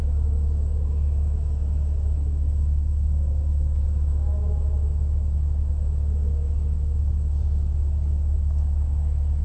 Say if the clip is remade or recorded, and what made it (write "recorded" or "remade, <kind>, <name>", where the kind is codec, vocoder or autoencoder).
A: remade, autoencoder, DAC-VAE